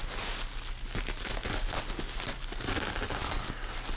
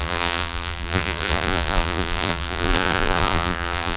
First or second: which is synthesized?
second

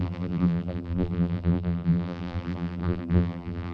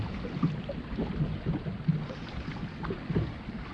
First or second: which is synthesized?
first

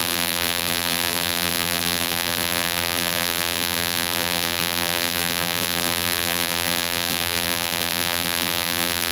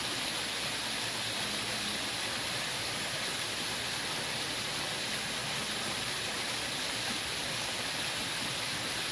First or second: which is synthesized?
first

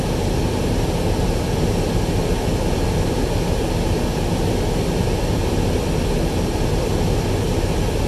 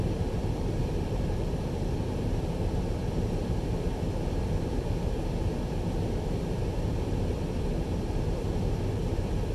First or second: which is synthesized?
second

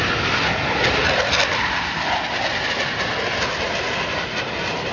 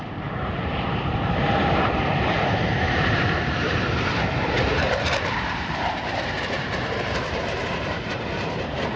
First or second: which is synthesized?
second